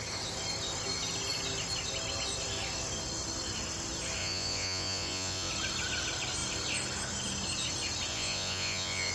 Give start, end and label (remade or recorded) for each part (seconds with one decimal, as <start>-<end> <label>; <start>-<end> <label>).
0.0-4.2 recorded; 4.2-5.5 remade; 5.5-8.1 recorded; 8.1-9.1 remade